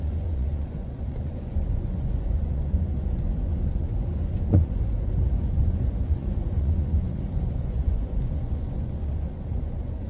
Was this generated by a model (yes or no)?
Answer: yes